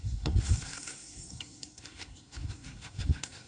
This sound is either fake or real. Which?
fake